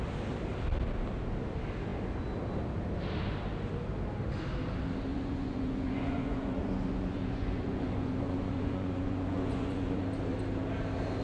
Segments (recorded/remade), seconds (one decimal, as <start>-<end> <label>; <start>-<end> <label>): 0.0-5.1 recorded; 5.1-10.0 remade; 10.0-11.2 recorded